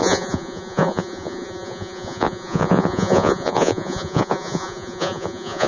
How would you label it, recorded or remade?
remade